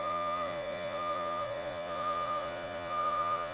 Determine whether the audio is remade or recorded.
remade